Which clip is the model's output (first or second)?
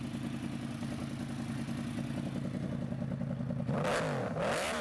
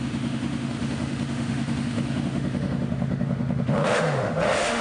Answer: second